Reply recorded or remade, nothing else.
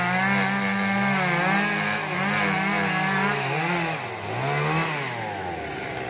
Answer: recorded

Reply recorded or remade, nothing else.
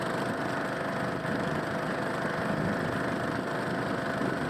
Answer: recorded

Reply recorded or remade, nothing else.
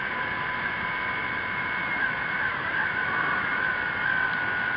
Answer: remade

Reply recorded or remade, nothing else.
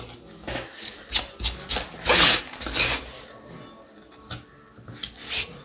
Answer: recorded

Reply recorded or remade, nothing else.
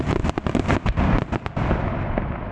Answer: recorded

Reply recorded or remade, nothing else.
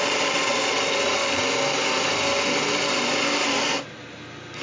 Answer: recorded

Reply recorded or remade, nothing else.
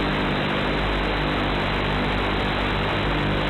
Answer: recorded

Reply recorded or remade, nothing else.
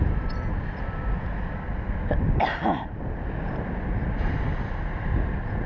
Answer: recorded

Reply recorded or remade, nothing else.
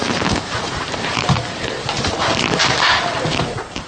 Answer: remade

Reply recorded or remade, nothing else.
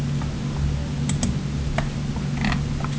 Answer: recorded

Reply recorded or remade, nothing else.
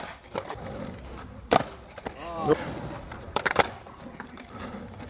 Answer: remade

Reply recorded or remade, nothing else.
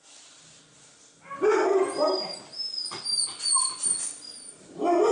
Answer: recorded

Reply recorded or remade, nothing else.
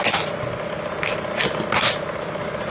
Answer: recorded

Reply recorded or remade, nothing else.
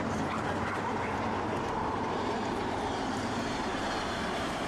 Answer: remade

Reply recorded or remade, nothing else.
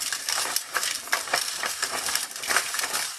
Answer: remade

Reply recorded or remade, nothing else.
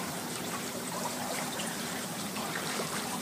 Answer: remade